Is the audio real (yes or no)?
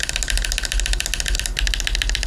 yes